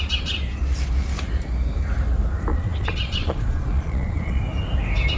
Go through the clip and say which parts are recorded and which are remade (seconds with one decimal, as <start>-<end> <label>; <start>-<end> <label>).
0.0-2.5 recorded; 2.5-4.4 remade; 4.4-5.2 recorded